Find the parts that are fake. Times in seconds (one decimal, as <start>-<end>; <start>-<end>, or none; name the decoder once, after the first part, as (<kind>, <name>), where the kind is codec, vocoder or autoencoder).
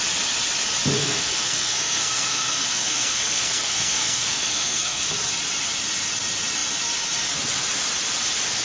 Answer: 1.0-5.1 (codec, SNAC)